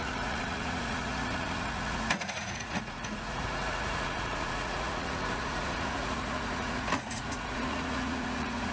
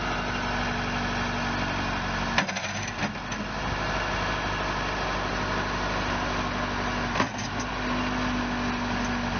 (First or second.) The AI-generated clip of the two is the first